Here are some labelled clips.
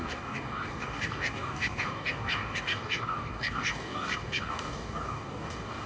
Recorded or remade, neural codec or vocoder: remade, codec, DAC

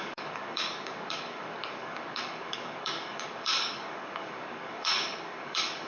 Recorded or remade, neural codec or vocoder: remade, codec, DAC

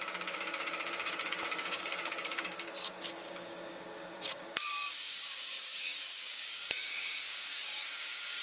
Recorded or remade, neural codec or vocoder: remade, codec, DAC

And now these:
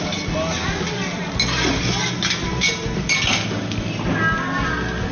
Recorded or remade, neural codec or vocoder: recorded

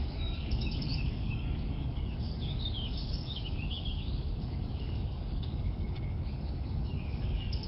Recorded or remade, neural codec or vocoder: remade, codec, DAC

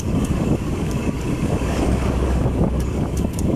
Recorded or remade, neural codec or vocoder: remade, codec, DAC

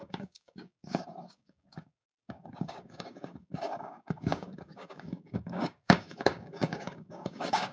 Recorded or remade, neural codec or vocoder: remade, codec, DAC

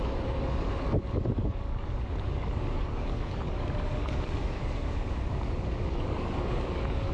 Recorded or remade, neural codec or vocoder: remade, codec, DAC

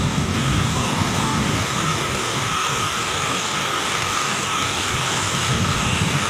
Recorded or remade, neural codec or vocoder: remade, codec, DAC